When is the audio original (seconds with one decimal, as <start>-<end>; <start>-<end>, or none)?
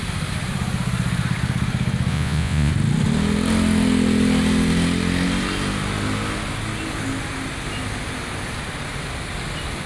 0.0-2.1; 2.7-9.9